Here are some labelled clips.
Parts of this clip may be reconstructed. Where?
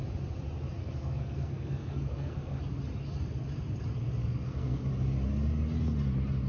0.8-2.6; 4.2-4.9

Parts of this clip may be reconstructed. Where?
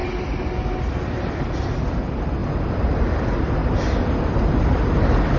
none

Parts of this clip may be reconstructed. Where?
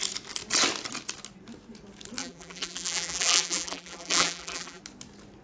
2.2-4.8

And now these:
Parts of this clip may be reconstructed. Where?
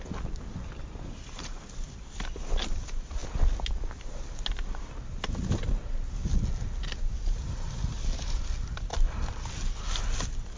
none